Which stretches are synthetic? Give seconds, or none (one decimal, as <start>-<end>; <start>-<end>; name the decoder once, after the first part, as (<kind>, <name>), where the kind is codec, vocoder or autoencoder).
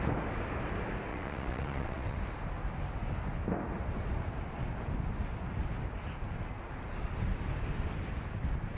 1.1-2.2 (vocoder, WaveNeXt)